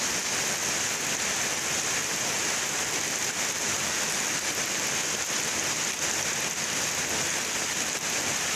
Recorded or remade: recorded